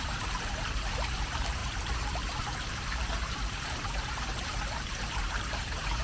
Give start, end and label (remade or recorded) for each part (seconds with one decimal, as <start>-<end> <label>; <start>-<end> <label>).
0.0-6.0 remade

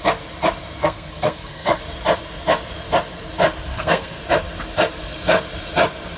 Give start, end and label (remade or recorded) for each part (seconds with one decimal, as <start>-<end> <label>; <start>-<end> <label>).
0.0-0.8 recorded; 0.8-1.8 remade; 1.8-3.7 recorded; 3.7-4.2 remade; 4.2-6.2 recorded

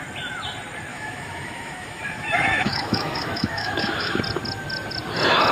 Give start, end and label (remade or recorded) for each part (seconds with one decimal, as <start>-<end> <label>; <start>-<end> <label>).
0.0-0.9 recorded; 0.9-4.2 remade; 4.2-5.5 recorded

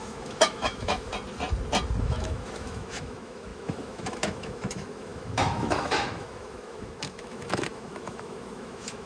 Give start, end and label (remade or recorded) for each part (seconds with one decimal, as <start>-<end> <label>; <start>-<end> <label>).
0.0-1.1 remade; 1.1-2.0 recorded; 2.0-9.1 remade

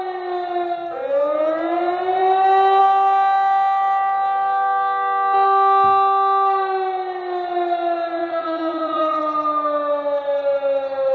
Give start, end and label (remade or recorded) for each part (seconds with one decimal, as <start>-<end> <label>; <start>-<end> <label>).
0.0-8.2 recorded; 8.2-9.2 remade; 9.2-11.1 recorded